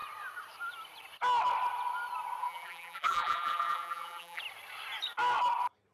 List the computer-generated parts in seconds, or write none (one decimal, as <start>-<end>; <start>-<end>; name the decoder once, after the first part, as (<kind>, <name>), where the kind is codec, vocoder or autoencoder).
2.4-4.4 (vocoder, BigVGAN v2)